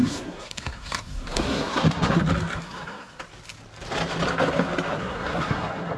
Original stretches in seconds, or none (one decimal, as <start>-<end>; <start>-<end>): 2.2-2.6; 3.2-4.9